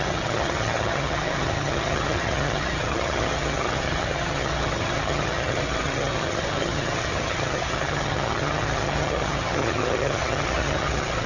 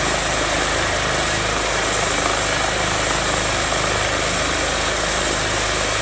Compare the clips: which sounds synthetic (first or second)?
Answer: first